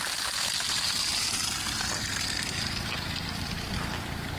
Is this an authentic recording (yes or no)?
yes